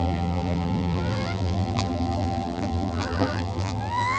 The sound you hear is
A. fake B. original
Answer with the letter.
A